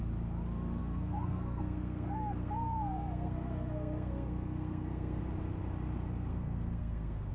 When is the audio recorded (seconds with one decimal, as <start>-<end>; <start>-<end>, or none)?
0.0-0.8; 5.2-6.3